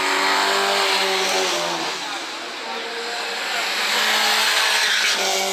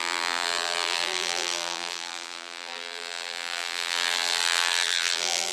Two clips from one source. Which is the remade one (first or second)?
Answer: second